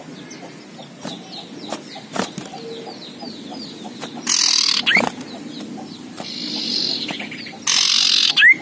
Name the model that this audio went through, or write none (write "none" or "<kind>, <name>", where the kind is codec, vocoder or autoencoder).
none